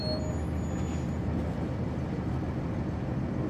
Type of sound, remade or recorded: recorded